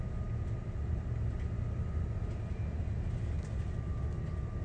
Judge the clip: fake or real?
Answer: real